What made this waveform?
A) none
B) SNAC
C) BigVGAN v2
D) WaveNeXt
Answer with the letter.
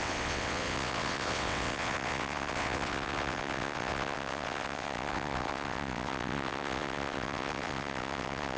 D